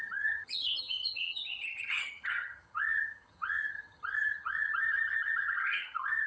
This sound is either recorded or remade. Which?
remade